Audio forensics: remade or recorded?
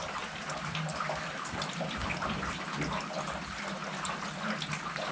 remade